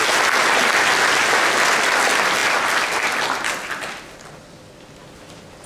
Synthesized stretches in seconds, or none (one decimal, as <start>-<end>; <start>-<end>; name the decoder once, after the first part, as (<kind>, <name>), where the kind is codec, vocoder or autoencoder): none